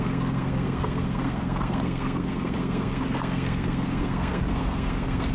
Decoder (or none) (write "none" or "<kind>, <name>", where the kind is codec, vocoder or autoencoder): codec, SNAC